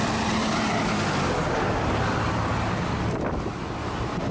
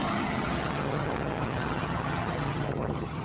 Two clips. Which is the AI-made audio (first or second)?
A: second